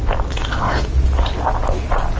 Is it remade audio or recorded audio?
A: recorded